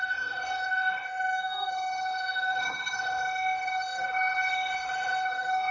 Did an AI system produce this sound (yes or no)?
yes